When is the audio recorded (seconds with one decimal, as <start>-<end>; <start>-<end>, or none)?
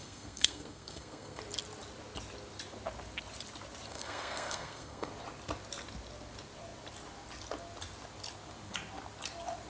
1.4-3.9; 5.1-9.7